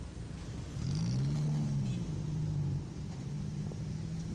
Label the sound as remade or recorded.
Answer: recorded